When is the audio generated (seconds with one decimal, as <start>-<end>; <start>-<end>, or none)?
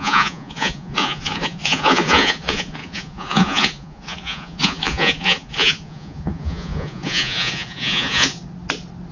0.0-8.4